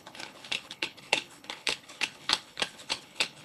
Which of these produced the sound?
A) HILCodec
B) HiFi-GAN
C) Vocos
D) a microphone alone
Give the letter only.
A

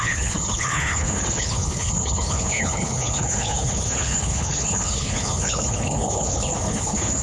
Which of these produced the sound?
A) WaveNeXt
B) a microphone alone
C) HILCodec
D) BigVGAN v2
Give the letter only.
C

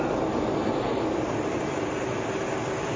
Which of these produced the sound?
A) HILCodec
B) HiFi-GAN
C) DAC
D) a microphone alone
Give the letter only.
D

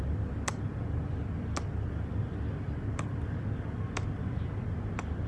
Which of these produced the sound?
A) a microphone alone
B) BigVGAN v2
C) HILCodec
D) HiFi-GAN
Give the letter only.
A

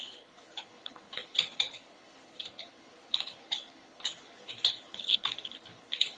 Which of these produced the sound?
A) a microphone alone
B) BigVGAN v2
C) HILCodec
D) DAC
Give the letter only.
C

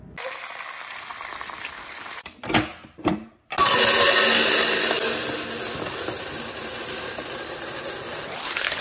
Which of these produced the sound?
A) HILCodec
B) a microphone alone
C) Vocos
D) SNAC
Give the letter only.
B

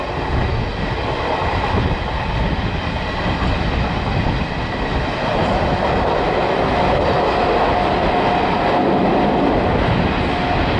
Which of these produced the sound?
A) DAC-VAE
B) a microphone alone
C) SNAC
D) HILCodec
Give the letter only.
B